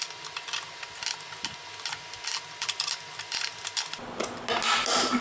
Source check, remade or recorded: recorded